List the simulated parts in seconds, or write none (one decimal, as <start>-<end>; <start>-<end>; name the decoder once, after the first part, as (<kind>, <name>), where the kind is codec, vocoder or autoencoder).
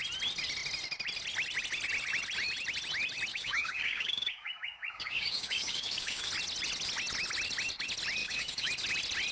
3.3-6.3 (codec, DAC); 8.2-8.7